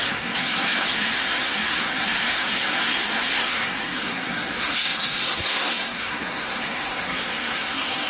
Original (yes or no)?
no